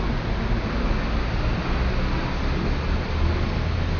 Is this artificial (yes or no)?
no